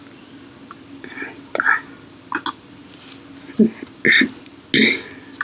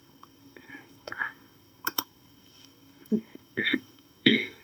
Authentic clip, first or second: first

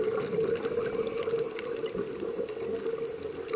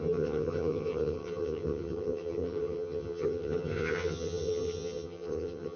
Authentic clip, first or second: first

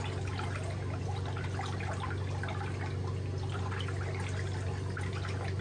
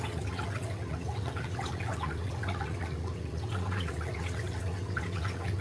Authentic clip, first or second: first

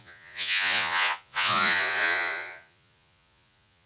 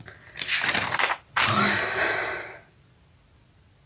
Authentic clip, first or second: second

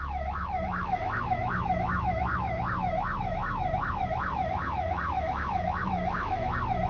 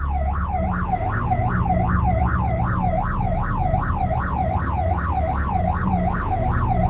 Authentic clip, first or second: second